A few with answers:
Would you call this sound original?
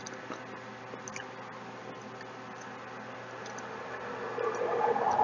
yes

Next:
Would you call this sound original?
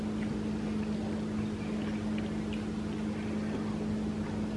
yes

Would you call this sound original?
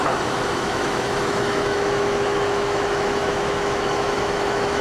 no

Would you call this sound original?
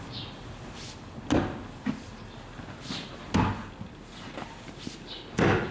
yes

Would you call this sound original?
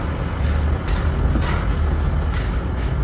yes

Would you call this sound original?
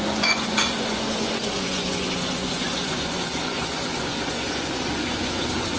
no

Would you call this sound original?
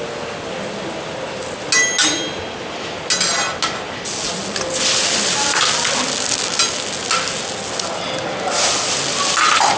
yes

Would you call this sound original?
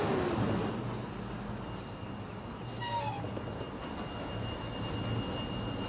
yes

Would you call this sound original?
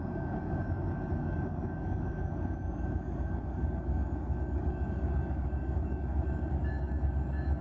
no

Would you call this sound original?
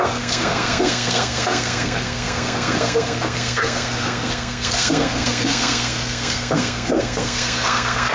no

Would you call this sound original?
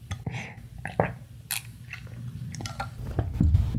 yes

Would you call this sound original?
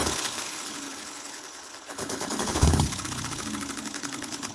no